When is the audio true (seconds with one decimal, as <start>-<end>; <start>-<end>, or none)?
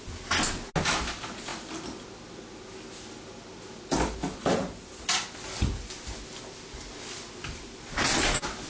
0.0-8.7